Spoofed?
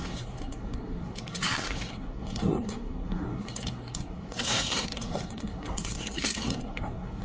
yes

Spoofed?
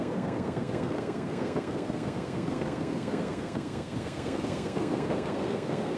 yes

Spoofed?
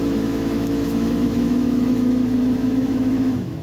yes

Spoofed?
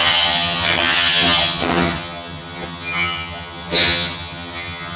yes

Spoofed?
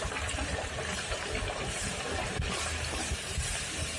yes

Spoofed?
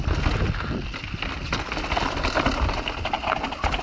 no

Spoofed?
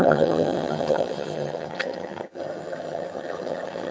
yes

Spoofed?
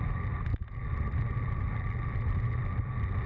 no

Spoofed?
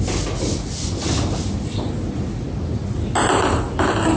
no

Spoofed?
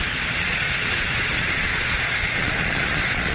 yes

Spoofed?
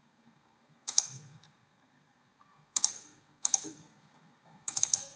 yes